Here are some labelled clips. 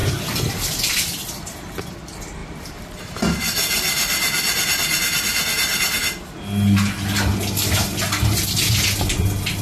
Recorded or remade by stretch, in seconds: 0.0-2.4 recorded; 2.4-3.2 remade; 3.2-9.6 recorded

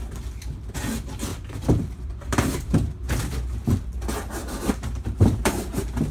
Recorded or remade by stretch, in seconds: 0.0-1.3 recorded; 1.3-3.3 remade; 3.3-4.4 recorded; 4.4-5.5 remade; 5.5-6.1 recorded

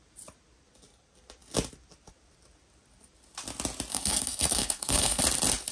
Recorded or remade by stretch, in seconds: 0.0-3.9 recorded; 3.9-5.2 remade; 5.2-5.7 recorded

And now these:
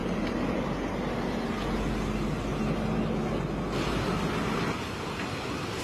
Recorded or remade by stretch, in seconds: 0.0-5.8 recorded

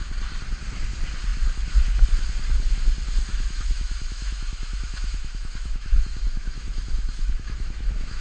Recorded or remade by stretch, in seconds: 0.0-3.3 recorded; 3.3-8.2 remade

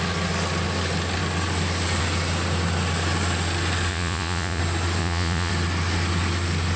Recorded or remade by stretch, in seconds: 0.0-3.9 recorded; 3.9-4.6 remade; 4.6-5.0 recorded; 5.0-5.5 remade; 5.5-6.8 recorded

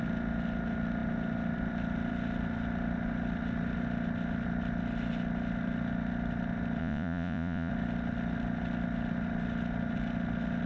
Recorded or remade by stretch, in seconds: 0.0-6.8 recorded; 6.8-7.7 remade; 7.7-10.7 recorded

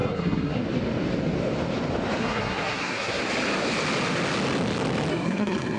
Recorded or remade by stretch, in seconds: 0.0-0.6 remade; 0.6-2.2 recorded; 2.2-3.2 remade; 3.2-5.1 recorded; 5.1-5.8 remade